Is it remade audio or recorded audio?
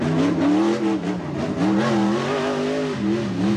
recorded